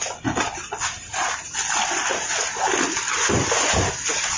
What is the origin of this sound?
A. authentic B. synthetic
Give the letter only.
A